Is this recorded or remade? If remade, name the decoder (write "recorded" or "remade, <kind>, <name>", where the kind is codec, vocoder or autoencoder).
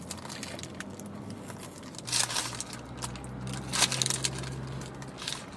recorded